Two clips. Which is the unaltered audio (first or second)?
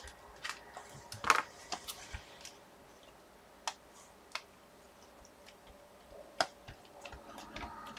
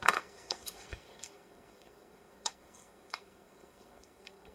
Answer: first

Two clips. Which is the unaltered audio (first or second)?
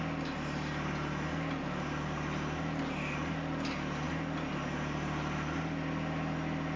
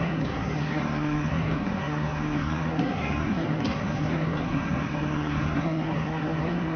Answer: first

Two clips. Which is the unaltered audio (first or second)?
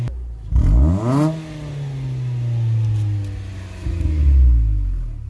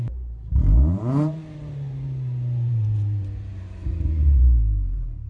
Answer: first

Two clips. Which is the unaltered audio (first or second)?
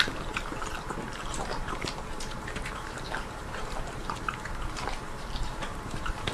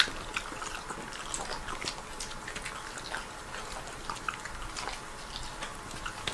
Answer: second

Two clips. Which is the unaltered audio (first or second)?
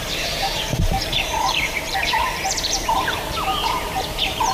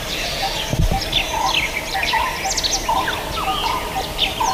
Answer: second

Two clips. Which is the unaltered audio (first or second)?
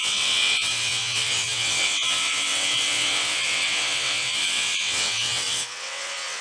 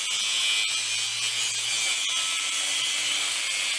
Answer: second